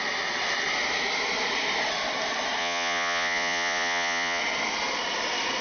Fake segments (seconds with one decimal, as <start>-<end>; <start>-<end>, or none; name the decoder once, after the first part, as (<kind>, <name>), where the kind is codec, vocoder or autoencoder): 2.6-4.4 (vocoder, Vocos)